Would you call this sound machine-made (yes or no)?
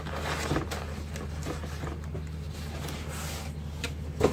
no